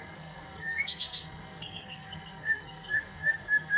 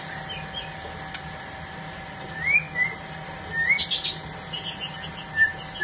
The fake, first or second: first